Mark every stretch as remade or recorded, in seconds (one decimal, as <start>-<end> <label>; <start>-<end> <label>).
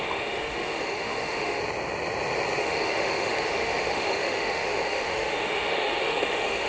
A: 0.0-1.6 remade; 1.6-2.6 recorded; 2.6-6.7 remade